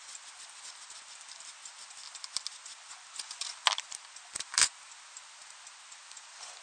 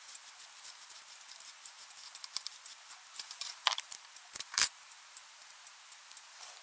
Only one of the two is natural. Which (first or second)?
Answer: first